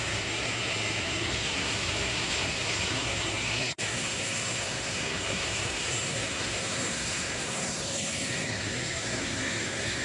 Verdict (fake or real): fake